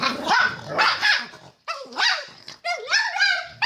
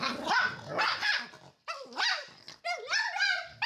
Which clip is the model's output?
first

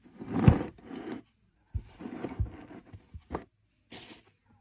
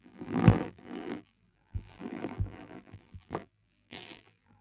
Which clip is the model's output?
second